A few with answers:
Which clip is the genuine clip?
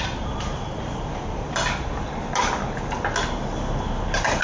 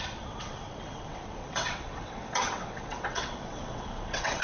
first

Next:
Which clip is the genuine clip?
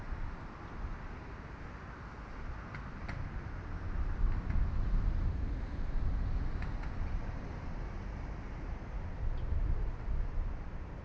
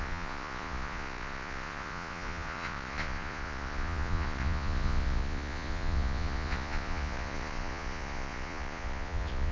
first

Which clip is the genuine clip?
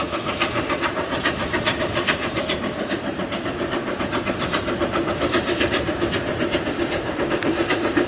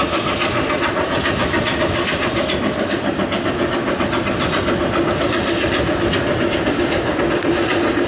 second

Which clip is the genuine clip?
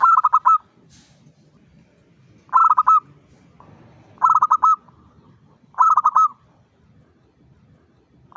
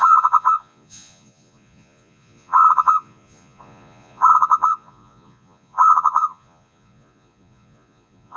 first